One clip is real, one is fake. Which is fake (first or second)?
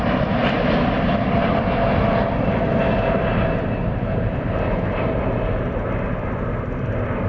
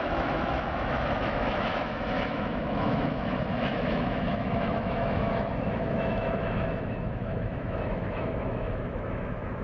second